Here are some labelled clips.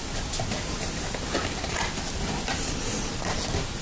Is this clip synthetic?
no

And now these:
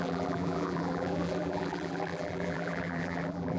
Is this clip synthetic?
yes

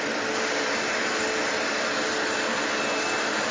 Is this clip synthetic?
no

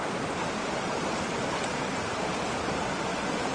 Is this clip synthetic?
yes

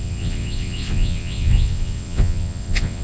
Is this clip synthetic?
yes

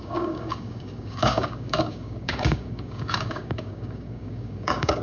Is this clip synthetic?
yes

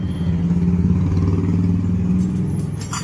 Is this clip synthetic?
no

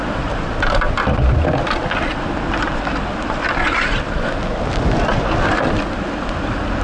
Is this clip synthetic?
no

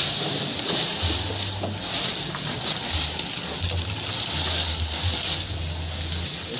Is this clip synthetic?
no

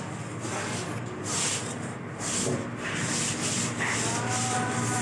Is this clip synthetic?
no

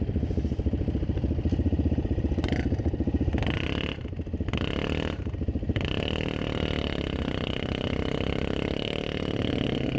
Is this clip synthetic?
no